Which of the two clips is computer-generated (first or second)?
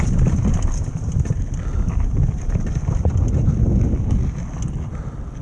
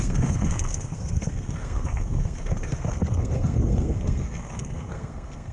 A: second